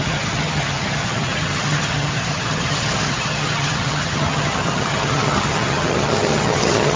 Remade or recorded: remade